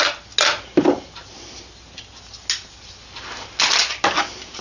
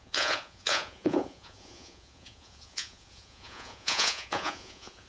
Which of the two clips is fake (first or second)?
second